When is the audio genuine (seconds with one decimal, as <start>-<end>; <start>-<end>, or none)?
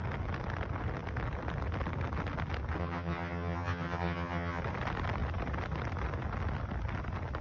0.0-2.8; 4.6-7.4